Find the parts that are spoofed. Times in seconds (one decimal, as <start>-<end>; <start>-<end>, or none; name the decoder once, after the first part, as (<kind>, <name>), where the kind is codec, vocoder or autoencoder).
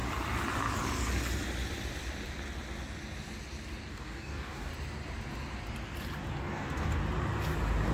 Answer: 3.9-4.7 (codec, DAC); 6.4-7.0